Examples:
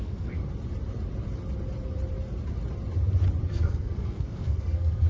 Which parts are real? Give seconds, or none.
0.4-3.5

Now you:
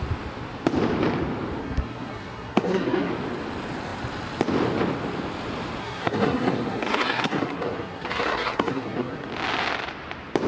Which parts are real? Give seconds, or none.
0.0-1.6; 3.1-5.8; 9.3-10.5

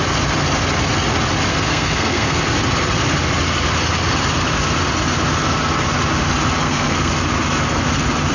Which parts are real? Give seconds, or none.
0.0-1.5; 2.4-6.6; 7.1-8.3

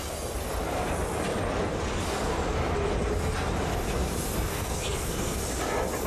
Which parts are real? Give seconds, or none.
0.0-4.5; 5.4-6.1

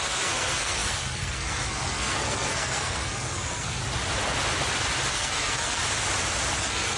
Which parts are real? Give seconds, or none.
3.8-5.1; 5.8-6.6

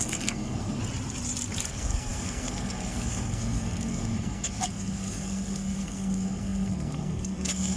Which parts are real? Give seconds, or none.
0.8-1.7

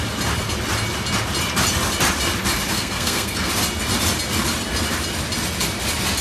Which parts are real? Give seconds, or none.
0.0-2.7; 3.5-6.2

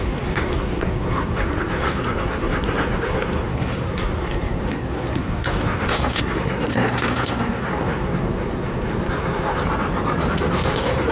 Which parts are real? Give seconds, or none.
9.6-10.5